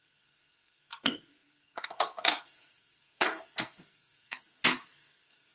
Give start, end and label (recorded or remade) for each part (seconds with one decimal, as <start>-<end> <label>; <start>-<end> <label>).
0.0-5.5 remade